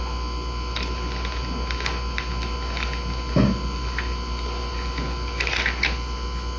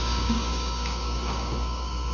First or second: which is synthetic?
second